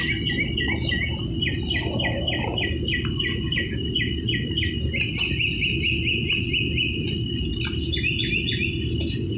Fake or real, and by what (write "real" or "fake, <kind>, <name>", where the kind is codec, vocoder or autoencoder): real